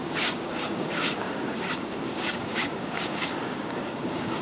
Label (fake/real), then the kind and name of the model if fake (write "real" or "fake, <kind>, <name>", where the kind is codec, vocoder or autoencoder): fake, codec, DAC